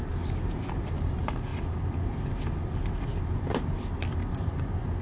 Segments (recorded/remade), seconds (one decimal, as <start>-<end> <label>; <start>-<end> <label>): 0.0-5.0 recorded

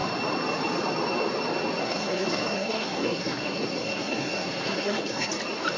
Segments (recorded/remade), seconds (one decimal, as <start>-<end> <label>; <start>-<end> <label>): 0.0-1.8 recorded; 1.8-5.3 remade; 5.3-5.8 recorded